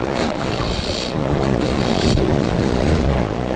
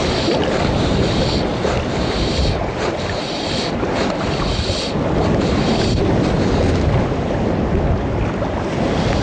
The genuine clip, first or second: second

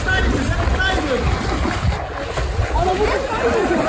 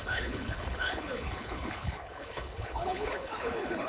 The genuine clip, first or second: first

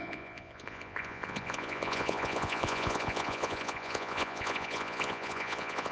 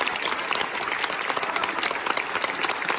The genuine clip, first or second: second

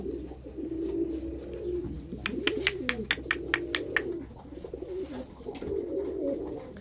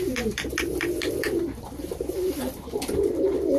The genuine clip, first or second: first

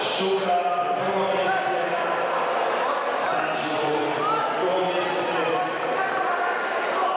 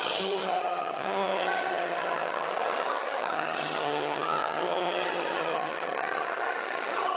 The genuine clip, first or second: first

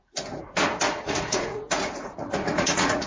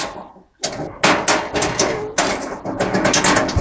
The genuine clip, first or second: second